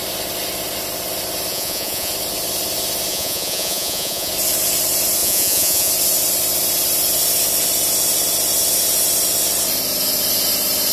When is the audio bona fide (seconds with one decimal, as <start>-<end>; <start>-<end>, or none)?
0.0-1.5; 2.1-3.1; 4.3-5.2; 5.9-10.9